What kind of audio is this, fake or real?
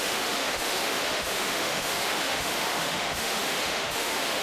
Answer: fake